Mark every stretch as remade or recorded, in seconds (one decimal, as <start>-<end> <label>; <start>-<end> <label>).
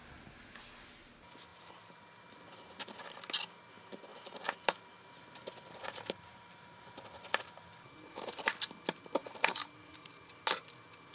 0.0-0.7 remade; 0.7-1.5 recorded; 1.5-2.3 remade; 2.3-4.1 recorded; 4.1-7.0 remade; 7.0-9.2 recorded; 9.2-10.3 remade; 10.3-11.1 recorded